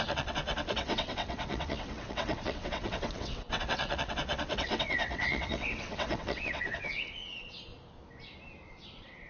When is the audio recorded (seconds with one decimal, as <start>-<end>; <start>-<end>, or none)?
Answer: 7.7-8.7